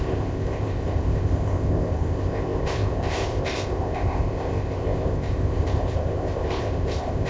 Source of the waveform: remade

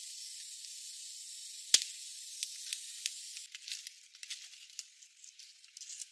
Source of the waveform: recorded